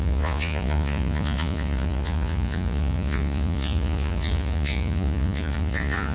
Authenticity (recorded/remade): remade